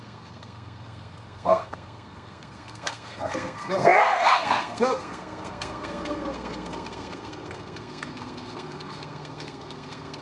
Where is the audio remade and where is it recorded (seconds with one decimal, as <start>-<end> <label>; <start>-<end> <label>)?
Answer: 0.0-10.2 remade